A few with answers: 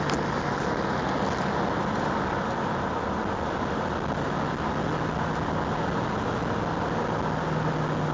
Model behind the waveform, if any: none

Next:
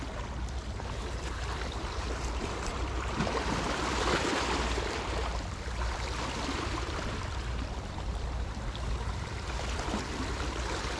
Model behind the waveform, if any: vocoder, BigVGAN v2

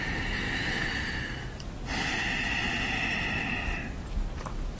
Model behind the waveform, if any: none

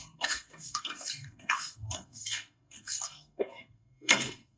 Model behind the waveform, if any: codec, SNAC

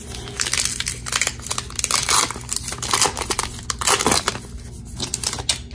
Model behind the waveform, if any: none